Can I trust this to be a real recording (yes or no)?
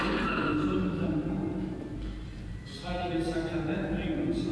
no